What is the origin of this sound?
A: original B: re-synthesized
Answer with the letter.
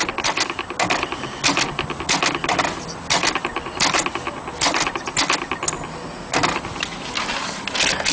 A